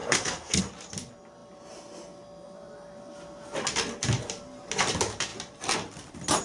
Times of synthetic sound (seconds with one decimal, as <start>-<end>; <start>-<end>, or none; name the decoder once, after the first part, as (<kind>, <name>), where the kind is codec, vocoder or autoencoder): 0.0-0.6 (codec, SNAC)